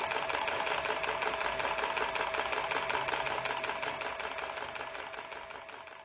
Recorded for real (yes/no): yes